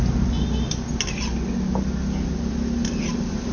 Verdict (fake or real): real